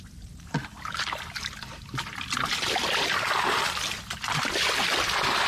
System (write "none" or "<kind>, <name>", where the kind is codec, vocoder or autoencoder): none